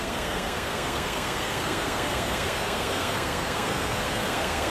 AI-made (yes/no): yes